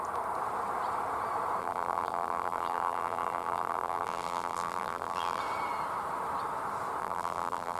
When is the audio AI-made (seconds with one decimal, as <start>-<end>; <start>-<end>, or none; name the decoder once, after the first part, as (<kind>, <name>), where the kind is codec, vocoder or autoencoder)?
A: 1.6-5.4 (vocoder, BigVGAN v2); 7.0-7.8